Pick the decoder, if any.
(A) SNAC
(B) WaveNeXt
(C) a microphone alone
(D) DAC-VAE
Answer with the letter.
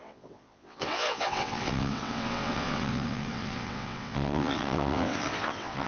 B